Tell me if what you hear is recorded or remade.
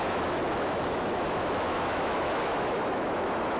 remade